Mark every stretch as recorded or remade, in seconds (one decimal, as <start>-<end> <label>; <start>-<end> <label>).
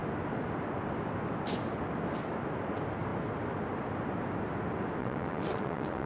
0.0-5.0 recorded; 5.0-6.1 remade